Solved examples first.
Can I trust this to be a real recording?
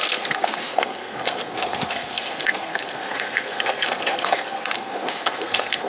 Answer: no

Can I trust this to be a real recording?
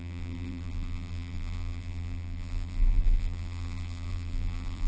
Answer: no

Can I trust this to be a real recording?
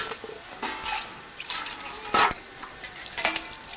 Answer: yes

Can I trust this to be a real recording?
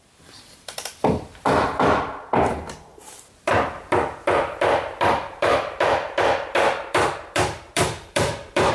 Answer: no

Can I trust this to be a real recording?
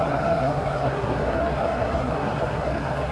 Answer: no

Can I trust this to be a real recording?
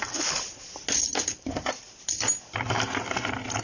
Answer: yes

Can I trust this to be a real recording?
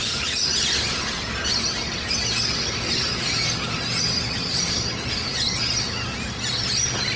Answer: yes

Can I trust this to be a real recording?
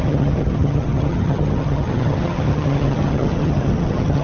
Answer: no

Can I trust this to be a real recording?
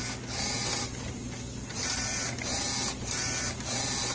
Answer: yes